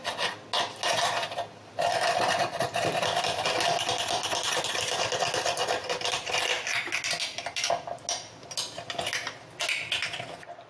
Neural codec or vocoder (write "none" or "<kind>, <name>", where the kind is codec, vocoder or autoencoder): none